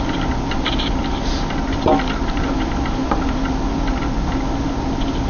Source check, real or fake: real